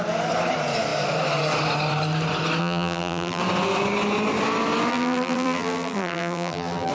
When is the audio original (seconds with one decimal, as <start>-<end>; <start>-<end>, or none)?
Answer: 0.0-2.6; 3.4-4.9